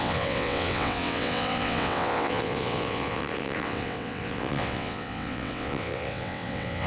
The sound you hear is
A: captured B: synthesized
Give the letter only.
B